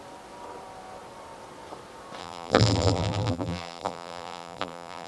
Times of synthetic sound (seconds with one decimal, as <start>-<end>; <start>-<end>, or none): 2.2-5.1